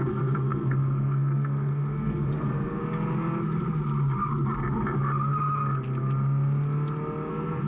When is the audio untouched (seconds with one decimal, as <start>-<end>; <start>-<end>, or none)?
2.8-7.3